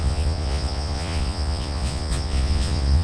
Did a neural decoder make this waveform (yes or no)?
yes